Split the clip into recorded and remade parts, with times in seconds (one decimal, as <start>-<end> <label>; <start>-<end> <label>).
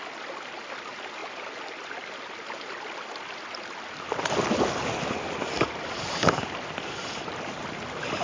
0.0-8.2 recorded